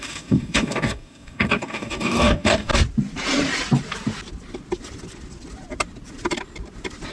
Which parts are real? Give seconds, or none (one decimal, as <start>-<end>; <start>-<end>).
2.7-7.1